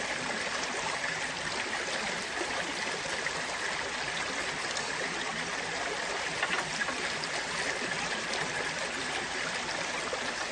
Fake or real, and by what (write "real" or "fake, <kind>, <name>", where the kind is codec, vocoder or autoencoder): real